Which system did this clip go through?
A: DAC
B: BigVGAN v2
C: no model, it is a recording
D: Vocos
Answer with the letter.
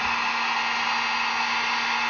C